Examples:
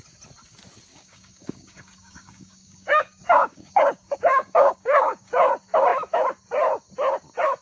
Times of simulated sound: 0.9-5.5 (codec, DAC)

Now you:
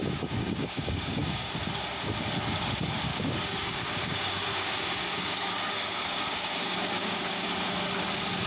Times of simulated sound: 0.0-1.5 (codec, DAC); 3.1-7.5

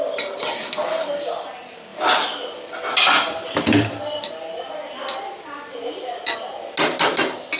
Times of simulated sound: none